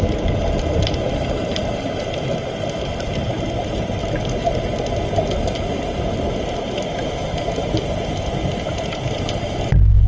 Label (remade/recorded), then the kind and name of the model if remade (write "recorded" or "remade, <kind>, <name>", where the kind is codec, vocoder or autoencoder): recorded